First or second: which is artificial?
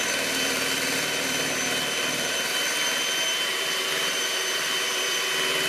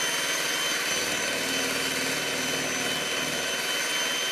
first